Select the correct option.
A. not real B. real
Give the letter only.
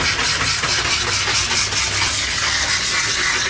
B